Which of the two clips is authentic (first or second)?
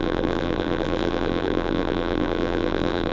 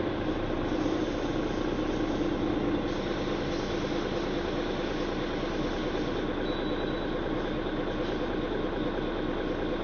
second